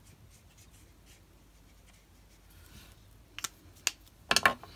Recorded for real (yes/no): yes